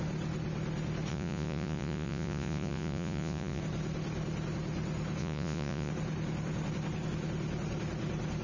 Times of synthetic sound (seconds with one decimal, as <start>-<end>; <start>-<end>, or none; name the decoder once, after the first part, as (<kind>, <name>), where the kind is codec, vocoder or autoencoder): 1.1-3.6 (vocoder, Vocos); 5.2-5.9